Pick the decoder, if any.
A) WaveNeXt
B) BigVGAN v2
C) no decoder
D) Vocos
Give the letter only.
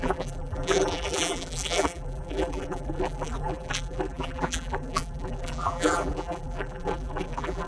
B